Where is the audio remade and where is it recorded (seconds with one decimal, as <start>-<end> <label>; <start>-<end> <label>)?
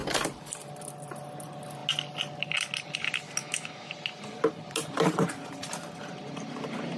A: 0.0-3.4 recorded; 3.4-3.9 remade; 3.9-7.0 recorded